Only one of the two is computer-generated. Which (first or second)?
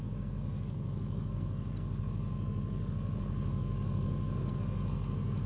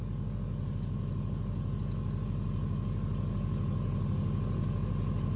first